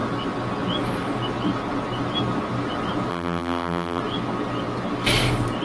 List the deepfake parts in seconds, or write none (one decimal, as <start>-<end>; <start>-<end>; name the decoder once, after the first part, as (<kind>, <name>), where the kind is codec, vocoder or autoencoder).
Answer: 3.1-4.0 (vocoder, BigVGAN v2)